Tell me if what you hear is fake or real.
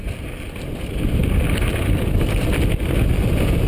real